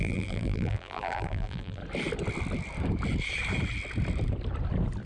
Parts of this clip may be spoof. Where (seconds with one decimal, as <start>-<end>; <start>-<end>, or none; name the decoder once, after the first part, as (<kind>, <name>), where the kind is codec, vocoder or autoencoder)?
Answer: 0.0-1.8 (vocoder, BigVGAN v2)